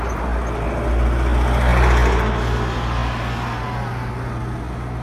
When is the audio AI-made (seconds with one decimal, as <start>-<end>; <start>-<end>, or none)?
none